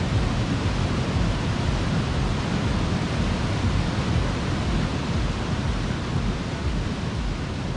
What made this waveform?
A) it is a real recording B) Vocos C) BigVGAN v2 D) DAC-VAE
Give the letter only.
A